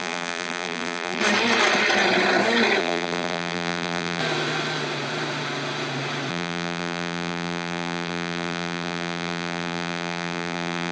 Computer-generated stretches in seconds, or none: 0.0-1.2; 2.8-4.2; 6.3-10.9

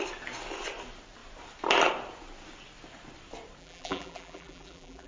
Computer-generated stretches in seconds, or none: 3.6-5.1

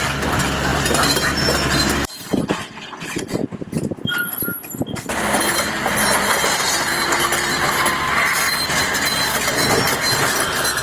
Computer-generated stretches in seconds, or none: 0.7-1.8

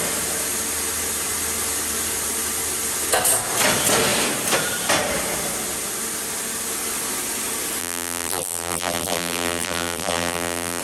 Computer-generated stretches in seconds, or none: 7.8-10.8